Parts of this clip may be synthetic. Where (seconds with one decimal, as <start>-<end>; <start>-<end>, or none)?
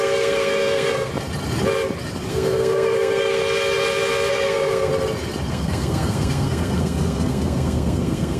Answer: 0.0-1.1; 2.3-3.4; 4.3-4.9; 5.5-8.4